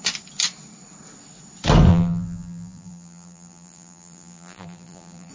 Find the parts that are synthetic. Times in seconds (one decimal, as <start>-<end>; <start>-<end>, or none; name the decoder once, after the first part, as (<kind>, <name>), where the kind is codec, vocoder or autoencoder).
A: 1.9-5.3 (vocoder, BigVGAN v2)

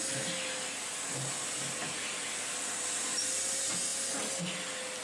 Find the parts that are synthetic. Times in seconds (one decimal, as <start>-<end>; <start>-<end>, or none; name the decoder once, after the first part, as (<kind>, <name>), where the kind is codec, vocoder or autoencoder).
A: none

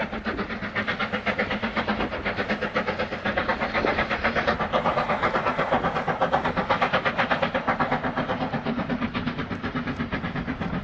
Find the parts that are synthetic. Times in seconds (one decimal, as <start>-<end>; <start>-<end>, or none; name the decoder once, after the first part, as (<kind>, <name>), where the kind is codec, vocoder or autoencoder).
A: none

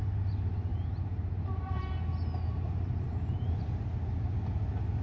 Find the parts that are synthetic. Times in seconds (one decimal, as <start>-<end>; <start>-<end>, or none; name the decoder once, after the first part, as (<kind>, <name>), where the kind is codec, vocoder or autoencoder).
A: 0.7-1.9 (vocoder, BigVGAN v2); 2.5-3.8